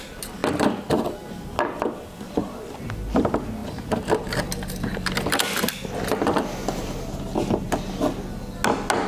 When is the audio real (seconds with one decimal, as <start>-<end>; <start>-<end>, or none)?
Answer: 0.0-9.1